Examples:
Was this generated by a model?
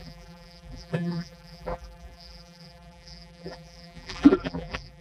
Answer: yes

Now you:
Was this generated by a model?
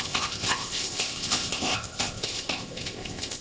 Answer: yes